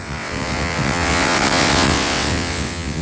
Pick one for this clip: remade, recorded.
remade